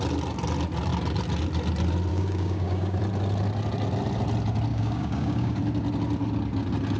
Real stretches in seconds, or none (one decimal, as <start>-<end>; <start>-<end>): 0.0-2.1; 3.0-4.7; 5.6-7.0

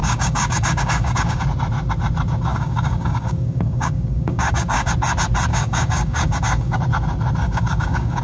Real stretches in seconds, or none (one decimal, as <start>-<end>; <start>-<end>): 1.4-2.5; 4.9-5.5; 6.8-7.4

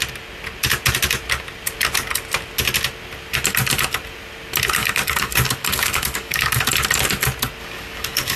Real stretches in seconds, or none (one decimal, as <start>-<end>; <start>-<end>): 0.0-4.8; 6.6-7.6

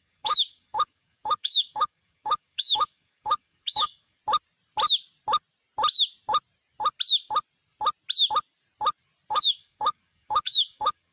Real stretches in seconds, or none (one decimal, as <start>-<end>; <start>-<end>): 4.2-9.3

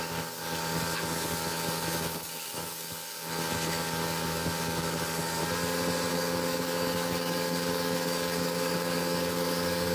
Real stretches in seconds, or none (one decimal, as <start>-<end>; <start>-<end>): 5.4-6.1

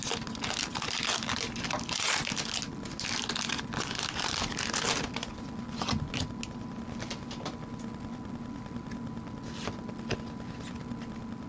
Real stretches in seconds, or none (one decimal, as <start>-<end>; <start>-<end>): 0.0-11.5